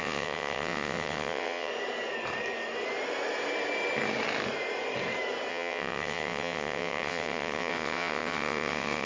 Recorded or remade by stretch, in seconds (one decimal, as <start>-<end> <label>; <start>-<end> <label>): 0.0-1.7 remade; 1.7-5.5 recorded; 5.5-9.1 remade